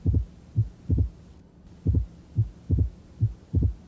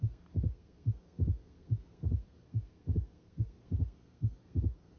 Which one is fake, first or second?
second